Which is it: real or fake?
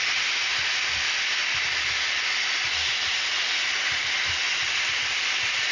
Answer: real